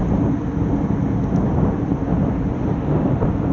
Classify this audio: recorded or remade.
recorded